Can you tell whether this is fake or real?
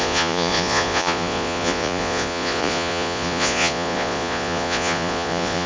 fake